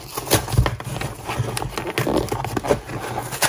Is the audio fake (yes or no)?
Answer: no